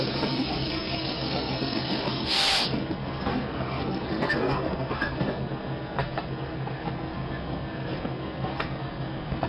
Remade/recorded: remade